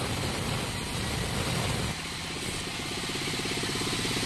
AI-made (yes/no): no